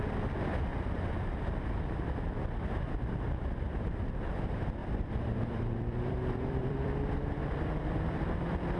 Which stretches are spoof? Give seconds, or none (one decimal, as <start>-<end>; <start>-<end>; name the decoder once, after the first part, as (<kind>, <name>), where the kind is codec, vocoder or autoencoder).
0.7-1.8 (vocoder, BigVGAN v2); 4.8-8.2